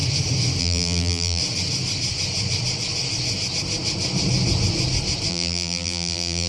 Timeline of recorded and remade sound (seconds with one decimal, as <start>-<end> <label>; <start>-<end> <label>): 0.0-0.6 recorded; 0.6-1.4 remade; 1.4-5.3 recorded; 5.3-6.5 remade